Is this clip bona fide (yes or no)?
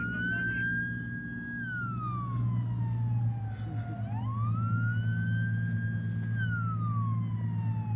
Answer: yes